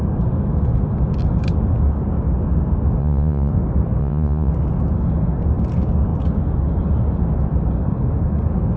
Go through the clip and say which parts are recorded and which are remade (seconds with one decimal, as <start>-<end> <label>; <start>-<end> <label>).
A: 0.0-3.0 recorded; 3.0-3.5 remade; 3.5-4.0 recorded; 4.0-4.5 remade; 4.5-8.8 recorded